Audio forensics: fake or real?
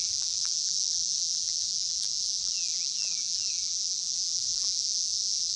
fake